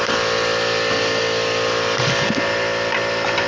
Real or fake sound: real